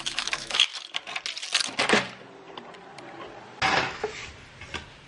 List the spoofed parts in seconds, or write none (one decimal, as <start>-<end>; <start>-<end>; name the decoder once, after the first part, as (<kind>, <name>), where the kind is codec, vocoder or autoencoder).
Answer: 0.0-0.7 (autoencoder, DAC-VAE); 3.8-4.2